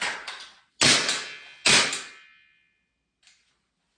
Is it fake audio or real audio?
real